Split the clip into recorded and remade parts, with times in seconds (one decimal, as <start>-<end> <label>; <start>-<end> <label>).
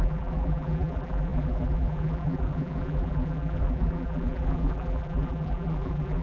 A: 0.0-6.2 remade